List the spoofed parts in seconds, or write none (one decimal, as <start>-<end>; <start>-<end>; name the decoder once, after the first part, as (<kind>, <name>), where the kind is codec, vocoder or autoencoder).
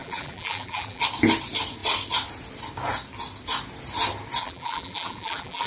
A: 0.0-1.0 (vocoder, BigVGAN v2); 4.4-5.7